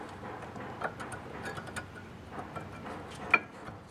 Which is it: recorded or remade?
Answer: recorded